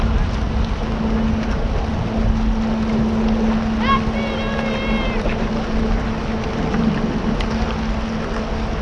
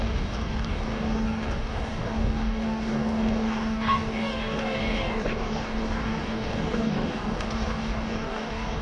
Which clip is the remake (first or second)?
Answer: second